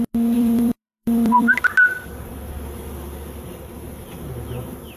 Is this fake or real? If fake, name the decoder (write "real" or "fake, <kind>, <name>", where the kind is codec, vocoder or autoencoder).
fake, vocoder, BigVGAN v2